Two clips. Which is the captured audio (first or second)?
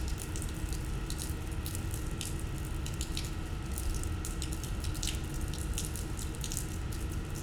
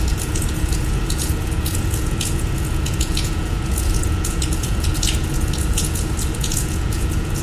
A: first